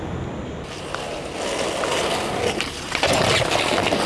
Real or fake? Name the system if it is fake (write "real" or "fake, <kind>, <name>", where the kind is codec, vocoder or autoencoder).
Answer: real